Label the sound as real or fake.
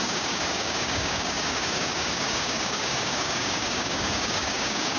fake